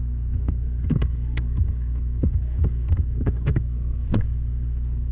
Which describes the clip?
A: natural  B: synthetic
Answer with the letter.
B